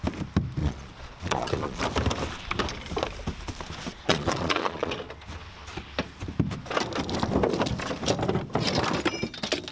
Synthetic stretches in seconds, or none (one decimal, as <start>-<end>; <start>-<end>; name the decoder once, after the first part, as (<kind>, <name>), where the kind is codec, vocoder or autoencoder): 0.6-1.8 (vocoder, Vocos); 3.9-4.9